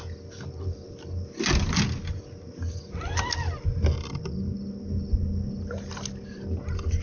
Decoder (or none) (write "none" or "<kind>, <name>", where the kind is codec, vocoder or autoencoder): none